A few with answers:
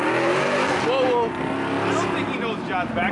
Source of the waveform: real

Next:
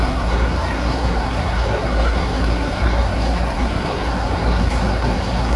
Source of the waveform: fake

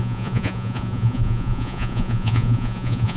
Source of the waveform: fake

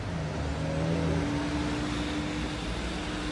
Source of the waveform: real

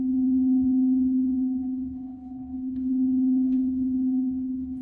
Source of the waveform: fake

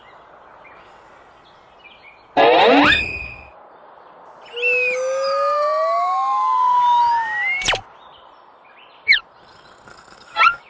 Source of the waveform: real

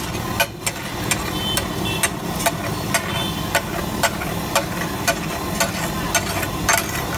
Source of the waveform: real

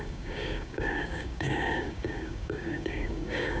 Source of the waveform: fake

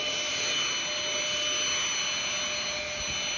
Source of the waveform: real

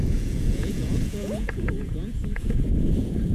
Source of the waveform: fake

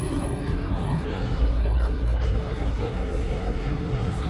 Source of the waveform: fake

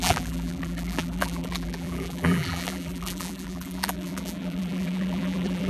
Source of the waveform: fake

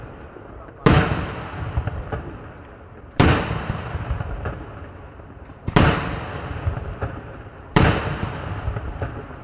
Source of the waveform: real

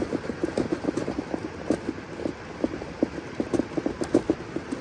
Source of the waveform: real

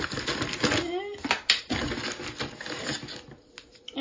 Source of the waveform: real